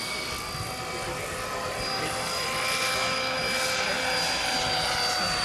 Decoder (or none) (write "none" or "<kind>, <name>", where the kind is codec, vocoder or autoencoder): none